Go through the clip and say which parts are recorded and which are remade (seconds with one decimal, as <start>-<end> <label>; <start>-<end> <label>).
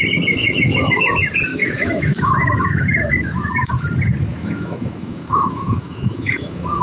0.0-0.4 recorded; 0.4-1.0 remade; 1.0-1.5 recorded; 1.5-3.7 remade; 3.7-4.3 recorded; 4.3-6.8 remade